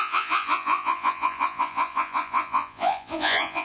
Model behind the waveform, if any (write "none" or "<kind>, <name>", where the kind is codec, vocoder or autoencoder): vocoder, Vocos